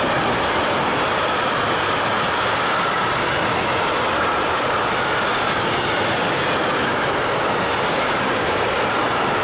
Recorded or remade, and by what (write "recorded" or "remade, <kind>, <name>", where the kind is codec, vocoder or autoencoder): recorded